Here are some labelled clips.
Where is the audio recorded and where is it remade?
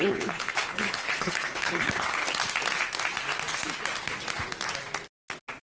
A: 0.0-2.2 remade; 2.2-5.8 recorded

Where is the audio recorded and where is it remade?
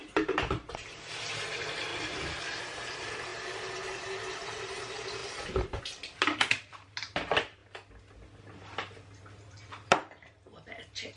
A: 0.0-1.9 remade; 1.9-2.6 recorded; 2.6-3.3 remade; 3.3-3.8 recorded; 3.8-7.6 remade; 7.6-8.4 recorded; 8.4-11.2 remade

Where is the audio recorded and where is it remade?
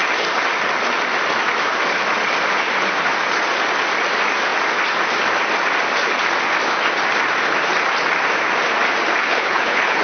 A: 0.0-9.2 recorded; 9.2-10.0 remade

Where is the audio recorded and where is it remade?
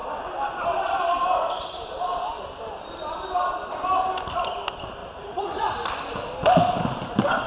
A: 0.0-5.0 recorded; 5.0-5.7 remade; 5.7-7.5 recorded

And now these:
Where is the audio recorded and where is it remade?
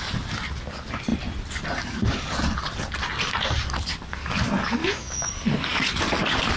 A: 0.0-4.8 recorded; 4.8-5.3 remade; 5.3-6.6 recorded